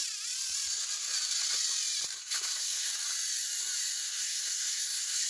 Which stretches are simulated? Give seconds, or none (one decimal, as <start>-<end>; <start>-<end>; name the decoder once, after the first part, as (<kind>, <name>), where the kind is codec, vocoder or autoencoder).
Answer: 2.2-2.9 (codec, SNAC); 4.0-5.3